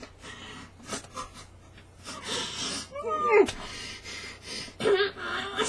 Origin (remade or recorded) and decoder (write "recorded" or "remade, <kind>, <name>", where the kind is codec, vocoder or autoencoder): recorded